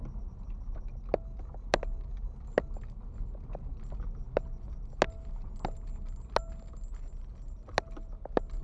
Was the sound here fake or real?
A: real